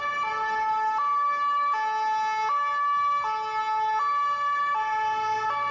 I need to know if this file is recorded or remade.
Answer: recorded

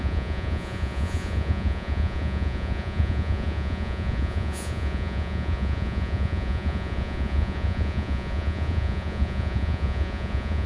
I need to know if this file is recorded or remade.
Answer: remade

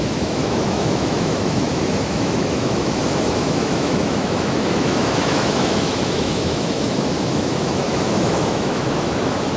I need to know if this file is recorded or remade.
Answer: remade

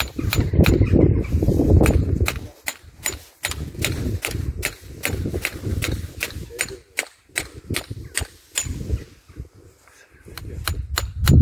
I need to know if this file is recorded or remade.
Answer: recorded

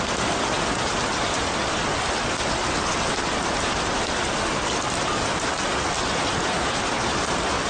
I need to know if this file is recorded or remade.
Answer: recorded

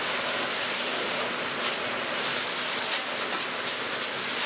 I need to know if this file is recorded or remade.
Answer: recorded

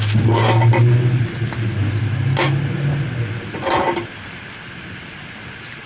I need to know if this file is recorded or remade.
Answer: recorded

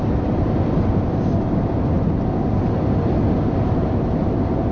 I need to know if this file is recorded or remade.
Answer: recorded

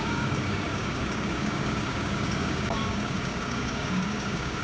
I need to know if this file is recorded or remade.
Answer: remade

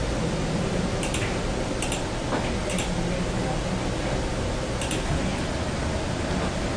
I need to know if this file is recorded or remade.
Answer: recorded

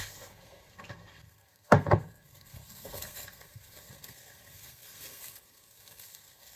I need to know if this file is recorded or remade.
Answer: remade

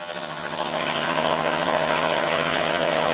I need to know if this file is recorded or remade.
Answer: remade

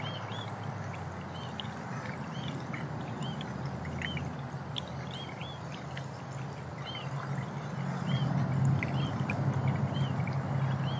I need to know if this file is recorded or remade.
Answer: recorded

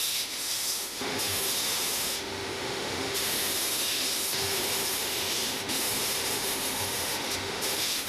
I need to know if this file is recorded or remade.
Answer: remade